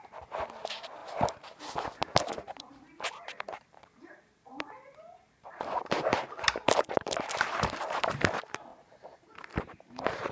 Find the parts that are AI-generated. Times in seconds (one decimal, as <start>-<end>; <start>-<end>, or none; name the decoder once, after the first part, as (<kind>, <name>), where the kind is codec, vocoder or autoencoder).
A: 0.0-10.3 (vocoder, BigVGAN v2)